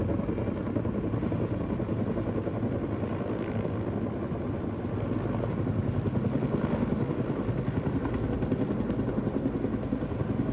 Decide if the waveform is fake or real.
real